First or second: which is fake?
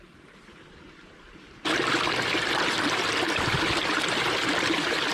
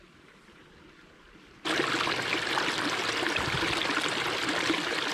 first